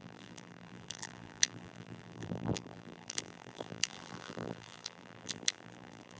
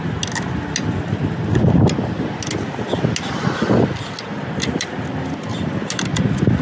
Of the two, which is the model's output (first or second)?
first